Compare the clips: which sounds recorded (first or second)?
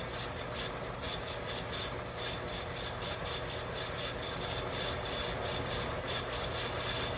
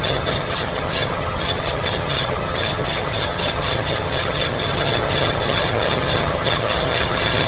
first